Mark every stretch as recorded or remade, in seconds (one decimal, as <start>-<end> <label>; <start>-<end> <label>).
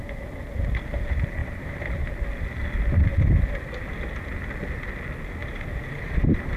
0.0-1.4 recorded; 1.4-2.1 remade; 2.1-5.4 recorded; 5.4-6.6 remade